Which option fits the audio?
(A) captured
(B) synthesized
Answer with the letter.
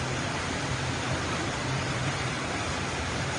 B